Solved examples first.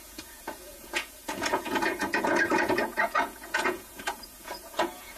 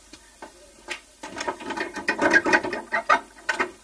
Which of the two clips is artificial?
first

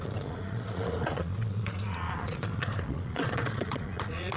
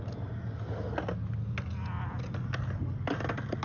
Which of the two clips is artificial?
first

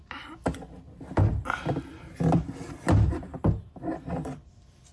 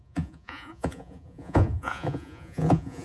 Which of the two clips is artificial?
second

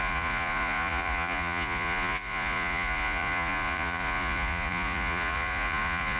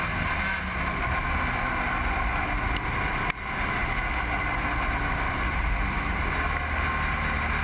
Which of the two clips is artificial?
first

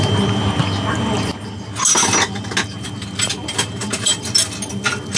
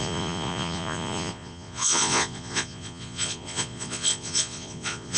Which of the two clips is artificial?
second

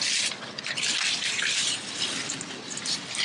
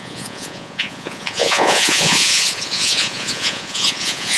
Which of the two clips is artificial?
second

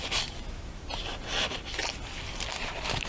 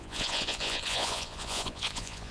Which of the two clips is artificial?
second